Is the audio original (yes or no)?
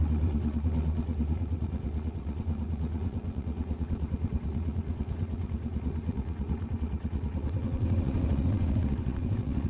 no